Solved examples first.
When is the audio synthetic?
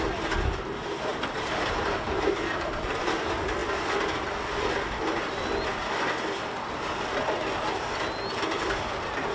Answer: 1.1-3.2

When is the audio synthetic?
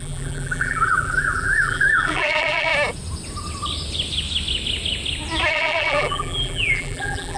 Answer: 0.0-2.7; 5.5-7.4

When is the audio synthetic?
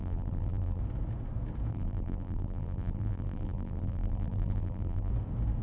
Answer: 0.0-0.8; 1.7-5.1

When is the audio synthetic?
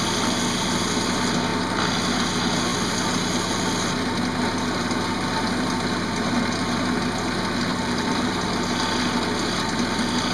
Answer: 7.7-8.5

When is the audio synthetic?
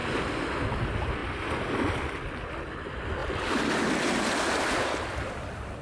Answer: 3.2-5.0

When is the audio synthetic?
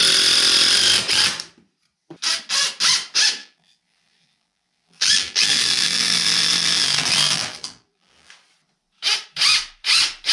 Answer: 3.4-8.3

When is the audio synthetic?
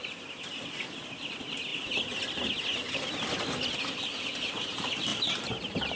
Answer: none